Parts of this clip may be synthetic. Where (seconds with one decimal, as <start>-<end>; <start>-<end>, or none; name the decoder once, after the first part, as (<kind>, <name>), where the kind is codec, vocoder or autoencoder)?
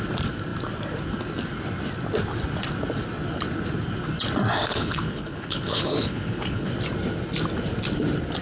4.7-6.7 (codec, HILCodec)